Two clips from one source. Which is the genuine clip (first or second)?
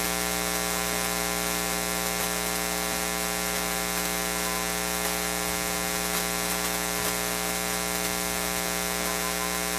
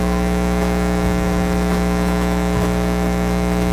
first